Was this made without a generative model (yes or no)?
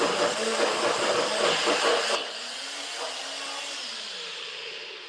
yes